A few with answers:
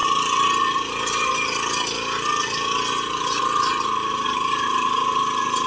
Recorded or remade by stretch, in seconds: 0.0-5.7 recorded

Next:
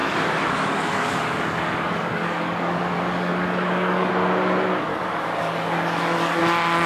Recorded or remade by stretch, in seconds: 0.0-4.1 remade; 4.1-4.9 recorded; 4.9-6.4 remade; 6.4-6.9 recorded

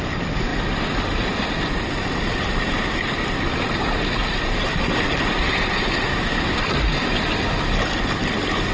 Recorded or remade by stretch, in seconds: 0.0-6.1 recorded; 6.1-6.6 remade; 6.6-8.7 recorded

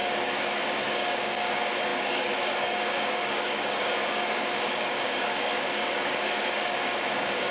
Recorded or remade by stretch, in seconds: 0.0-7.5 remade